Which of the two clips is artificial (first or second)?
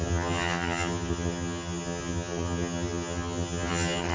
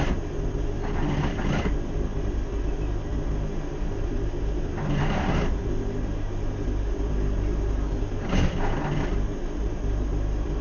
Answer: first